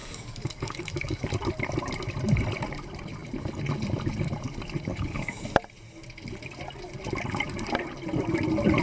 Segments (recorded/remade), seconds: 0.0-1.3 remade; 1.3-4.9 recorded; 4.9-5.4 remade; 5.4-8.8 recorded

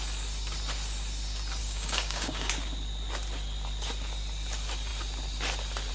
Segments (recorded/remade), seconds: 0.0-1.6 recorded; 1.6-2.5 remade; 2.5-5.9 recorded

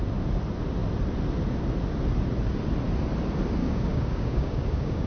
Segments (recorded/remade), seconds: 0.0-3.6 recorded; 3.6-5.1 remade

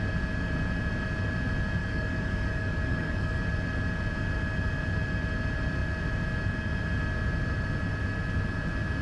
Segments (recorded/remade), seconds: 0.0-1.8 recorded; 1.8-3.4 remade; 3.4-9.0 recorded

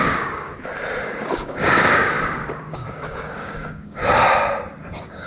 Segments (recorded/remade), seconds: 0.0-0.5 remade; 0.5-1.0 recorded; 1.0-4.0 remade; 4.0-4.8 recorded; 4.8-5.3 remade

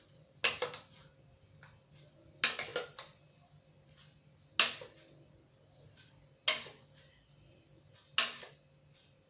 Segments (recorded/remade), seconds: 0.0-9.3 recorded